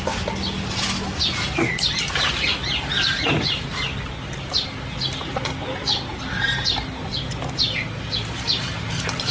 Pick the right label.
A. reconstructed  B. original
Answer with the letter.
B